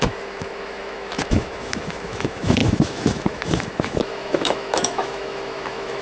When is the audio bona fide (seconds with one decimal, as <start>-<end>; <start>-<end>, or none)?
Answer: none